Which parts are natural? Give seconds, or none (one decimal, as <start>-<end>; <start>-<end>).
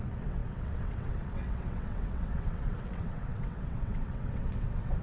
none